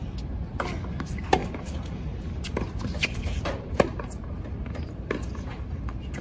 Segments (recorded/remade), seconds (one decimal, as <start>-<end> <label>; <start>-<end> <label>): 0.0-1.4 recorded; 1.4-5.1 remade; 5.1-6.2 recorded